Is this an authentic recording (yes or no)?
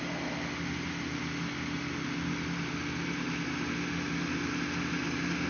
yes